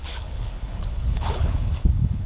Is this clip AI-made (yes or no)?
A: yes